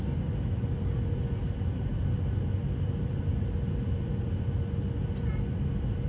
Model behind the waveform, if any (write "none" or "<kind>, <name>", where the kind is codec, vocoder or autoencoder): none